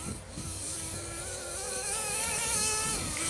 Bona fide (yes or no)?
no